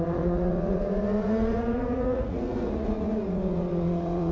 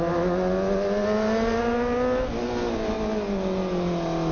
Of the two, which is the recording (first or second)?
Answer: second